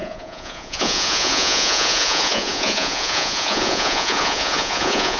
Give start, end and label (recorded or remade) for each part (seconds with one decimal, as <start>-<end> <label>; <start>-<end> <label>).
0.0-5.2 remade